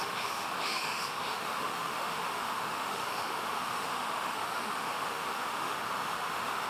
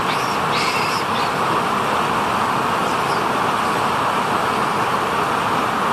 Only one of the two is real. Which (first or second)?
second